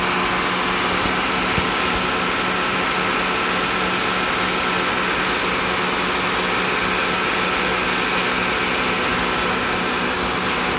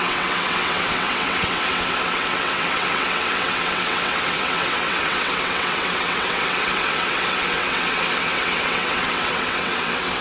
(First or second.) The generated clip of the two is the second